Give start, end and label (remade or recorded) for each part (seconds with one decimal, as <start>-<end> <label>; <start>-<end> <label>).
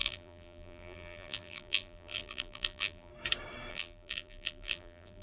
0.0-3.1 remade; 3.1-3.7 recorded; 3.7-5.2 remade